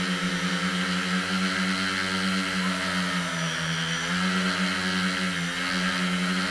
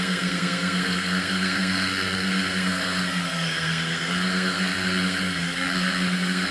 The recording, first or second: first